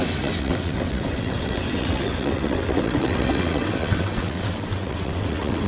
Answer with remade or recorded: remade